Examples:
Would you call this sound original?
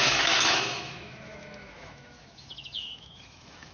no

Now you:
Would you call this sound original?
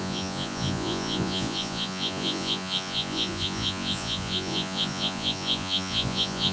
no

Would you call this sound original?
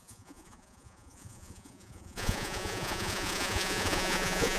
no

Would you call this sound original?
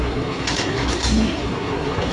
no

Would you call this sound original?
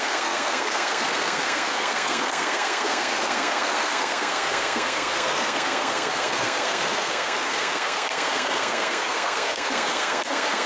no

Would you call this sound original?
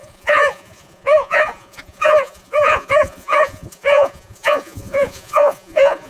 no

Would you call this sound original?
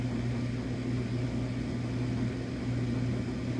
yes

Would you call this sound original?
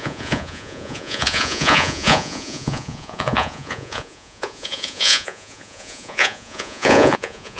no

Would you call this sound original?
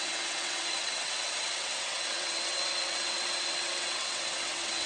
no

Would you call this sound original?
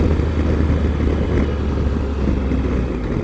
yes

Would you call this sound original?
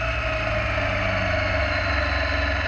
yes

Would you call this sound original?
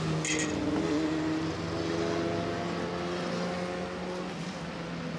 yes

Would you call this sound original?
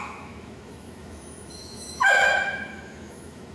no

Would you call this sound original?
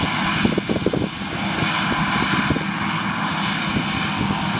yes